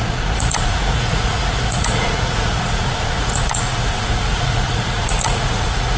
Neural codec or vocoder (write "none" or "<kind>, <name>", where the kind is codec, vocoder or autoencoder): vocoder, Vocos